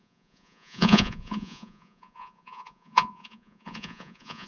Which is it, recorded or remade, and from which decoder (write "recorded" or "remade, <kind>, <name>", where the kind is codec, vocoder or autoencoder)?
remade, vocoder, Vocos